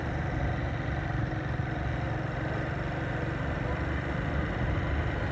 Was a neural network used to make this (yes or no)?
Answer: no